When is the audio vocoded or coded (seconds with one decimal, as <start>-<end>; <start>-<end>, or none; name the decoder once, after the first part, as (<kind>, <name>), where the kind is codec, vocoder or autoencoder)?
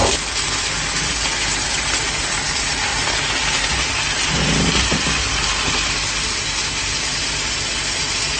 none